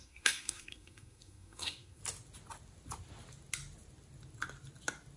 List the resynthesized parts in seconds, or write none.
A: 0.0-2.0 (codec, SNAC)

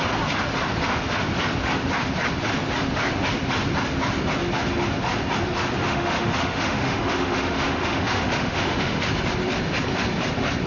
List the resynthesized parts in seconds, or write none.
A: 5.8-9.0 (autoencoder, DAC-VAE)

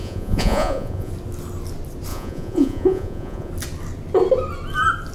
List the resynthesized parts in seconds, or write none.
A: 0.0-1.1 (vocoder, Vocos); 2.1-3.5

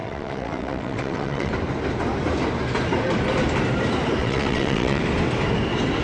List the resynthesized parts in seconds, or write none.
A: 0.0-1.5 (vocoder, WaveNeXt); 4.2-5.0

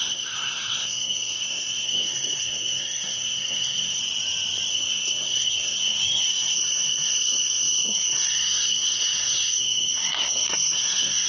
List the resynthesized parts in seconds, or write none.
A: 0.0-4.0 (codec, SNAC); 4.7-11.3

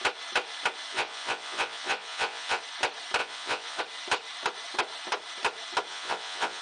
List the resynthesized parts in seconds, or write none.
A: 0.9-2.6 (vocoder, Vocos); 3.2-3.8; 5.9-6.6